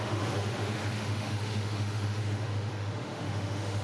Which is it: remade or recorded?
remade